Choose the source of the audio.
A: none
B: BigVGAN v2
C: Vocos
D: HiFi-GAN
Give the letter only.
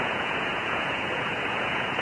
C